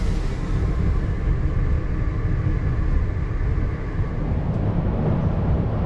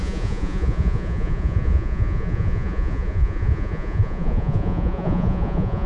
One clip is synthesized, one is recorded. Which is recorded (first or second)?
first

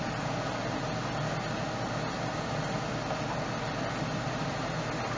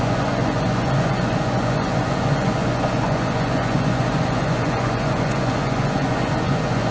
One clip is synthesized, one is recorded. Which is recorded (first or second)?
first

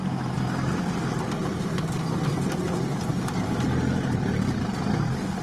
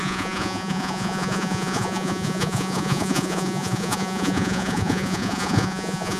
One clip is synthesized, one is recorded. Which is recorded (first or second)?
first